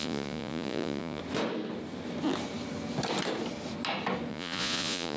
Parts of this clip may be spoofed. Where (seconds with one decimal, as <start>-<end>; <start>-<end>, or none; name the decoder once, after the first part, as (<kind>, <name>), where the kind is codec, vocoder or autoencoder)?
0.0-1.2 (vocoder, Vocos); 4.3-5.2

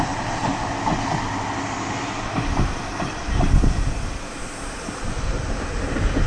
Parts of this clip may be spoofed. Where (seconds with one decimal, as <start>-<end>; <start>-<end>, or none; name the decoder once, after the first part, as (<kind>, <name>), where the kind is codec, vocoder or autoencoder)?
none

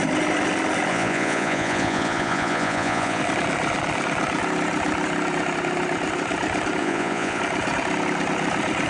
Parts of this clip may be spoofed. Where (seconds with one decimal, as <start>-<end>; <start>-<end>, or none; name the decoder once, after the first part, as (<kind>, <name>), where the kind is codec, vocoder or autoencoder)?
0.9-3.2 (vocoder, Vocos); 6.8-7.4

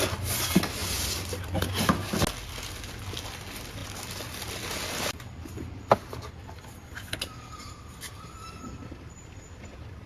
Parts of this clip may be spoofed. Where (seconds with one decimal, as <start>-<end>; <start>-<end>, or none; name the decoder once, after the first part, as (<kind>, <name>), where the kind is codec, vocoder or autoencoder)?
none

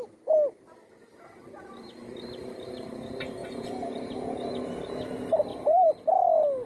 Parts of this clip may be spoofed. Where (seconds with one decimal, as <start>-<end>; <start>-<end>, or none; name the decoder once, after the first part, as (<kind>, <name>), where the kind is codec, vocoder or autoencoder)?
3.4-4.5 (vocoder, Vocos); 5.5-6.0

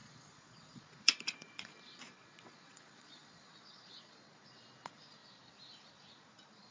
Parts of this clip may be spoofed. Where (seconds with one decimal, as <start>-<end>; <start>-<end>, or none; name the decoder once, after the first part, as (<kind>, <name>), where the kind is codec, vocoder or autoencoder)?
0.0-5.2 (vocoder, Vocos); 5.9-6.7

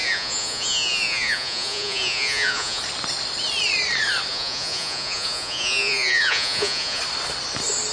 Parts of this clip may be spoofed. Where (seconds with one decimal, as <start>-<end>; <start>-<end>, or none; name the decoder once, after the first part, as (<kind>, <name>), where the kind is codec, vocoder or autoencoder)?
0.0-2.8 (vocoder, Vocos); 4.3-7.0

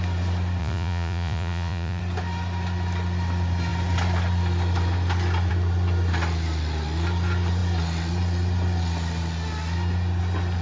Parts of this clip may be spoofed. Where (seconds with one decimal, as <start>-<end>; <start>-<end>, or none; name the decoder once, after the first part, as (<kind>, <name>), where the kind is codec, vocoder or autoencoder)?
0.6-2.0 (vocoder, Vocos)